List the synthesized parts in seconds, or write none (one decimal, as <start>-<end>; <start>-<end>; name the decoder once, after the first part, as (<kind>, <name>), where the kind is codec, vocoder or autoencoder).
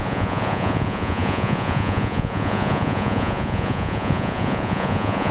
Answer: 0.0-5.3 (vocoder, Vocos)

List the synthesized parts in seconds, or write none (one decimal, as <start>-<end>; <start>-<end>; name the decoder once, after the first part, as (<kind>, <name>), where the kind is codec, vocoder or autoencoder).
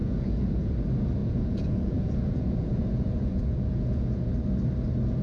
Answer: 0.0-0.7 (vocoder, Vocos); 1.2-4.3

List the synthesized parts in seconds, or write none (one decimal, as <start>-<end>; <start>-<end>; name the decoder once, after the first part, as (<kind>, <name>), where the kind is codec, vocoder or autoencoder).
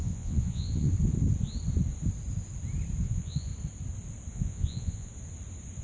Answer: 0.0-0.9 (vocoder, Vocos); 3.0-3.5; 4.3-5.1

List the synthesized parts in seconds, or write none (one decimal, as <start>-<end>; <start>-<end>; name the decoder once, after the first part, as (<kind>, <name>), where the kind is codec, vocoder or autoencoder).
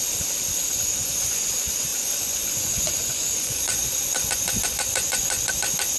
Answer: 0.7-1.4 (vocoder, Vocos); 1.9-5.5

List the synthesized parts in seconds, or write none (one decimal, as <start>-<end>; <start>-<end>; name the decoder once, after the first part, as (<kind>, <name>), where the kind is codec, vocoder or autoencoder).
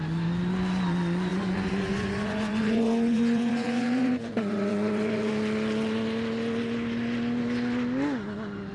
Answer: 1.3-5.3 (vocoder, Vocos)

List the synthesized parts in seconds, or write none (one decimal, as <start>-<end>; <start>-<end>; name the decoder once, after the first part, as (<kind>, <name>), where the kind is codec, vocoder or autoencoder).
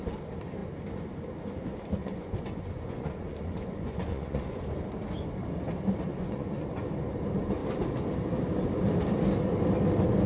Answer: 2.0-4.6 (vocoder, Vocos); 6.1-6.9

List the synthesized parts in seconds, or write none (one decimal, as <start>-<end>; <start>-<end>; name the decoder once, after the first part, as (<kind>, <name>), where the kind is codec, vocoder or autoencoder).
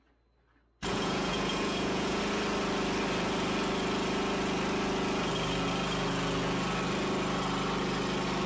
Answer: 0.9-2.2 (vocoder, Vocos)